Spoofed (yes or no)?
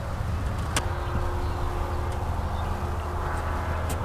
no